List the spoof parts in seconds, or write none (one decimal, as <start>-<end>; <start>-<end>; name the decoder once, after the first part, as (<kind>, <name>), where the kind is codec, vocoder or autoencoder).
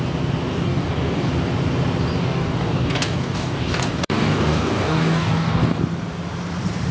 0.5-1.3 (codec, DAC); 2.2-5.8